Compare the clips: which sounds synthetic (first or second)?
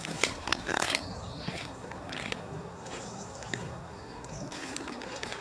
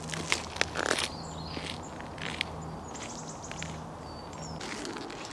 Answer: first